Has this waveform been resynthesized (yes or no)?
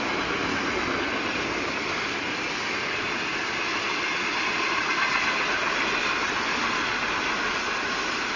no